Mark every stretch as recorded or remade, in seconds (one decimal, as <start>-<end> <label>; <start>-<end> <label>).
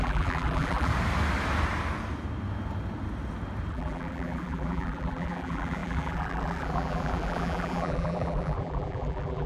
0.0-0.9 remade; 0.9-3.7 recorded; 3.7-9.5 remade